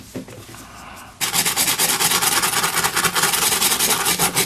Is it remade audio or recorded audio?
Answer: recorded